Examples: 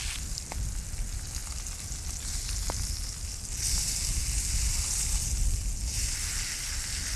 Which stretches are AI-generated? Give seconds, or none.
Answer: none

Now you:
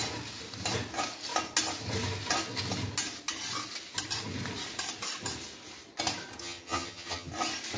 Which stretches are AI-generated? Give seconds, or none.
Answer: 6.4-7.3

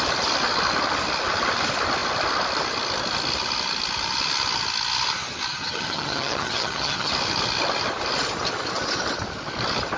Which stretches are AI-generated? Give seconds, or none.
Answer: 5.5-7.1